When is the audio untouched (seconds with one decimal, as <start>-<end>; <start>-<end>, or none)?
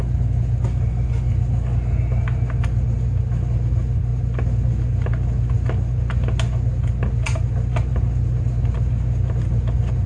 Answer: 0.0-10.1